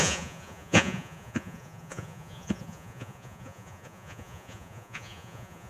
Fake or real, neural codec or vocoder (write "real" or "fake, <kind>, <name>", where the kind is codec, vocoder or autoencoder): fake, vocoder, Vocos